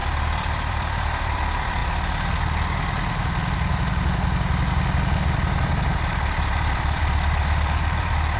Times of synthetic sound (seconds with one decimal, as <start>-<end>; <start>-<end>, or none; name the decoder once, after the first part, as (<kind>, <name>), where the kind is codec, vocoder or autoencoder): 0.0-1.8 (vocoder, BigVGAN v2); 5.2-8.4

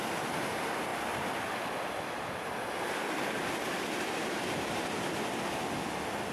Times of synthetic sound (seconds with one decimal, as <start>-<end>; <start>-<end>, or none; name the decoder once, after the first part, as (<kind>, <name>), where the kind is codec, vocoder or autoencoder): none